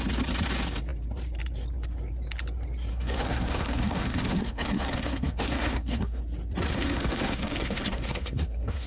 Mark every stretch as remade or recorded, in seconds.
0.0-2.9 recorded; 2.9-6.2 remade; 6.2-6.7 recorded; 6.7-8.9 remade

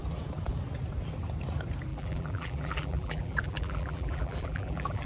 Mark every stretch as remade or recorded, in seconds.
0.0-1.9 recorded; 1.9-5.1 remade

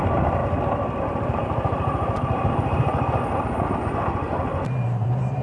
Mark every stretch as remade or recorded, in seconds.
0.0-0.4 remade; 0.4-1.0 recorded; 1.0-2.9 remade; 2.9-4.0 recorded; 4.0-5.4 remade

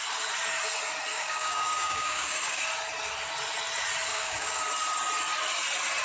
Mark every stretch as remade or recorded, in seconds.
0.0-1.1 recorded; 1.1-2.6 remade; 2.6-4.1 recorded; 4.1-4.6 remade; 4.6-6.0 recorded

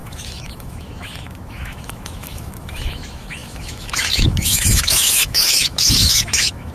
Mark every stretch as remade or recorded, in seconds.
0.0-6.7 remade

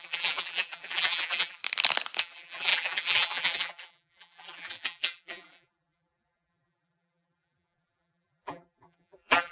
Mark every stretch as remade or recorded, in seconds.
0.0-1.6 remade; 1.6-2.2 recorded; 2.2-9.5 remade